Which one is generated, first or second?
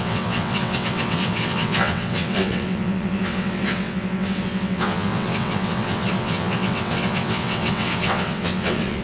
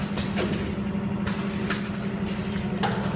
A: first